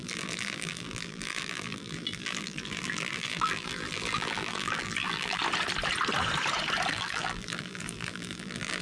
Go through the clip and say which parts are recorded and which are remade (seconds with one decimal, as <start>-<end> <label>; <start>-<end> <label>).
0.0-5.4 remade; 5.4-6.9 recorded; 6.9-8.8 remade